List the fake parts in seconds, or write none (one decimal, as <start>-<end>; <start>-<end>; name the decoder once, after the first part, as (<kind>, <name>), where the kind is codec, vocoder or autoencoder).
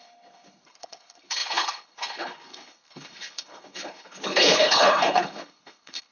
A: 0.0-6.1 (codec, HILCodec)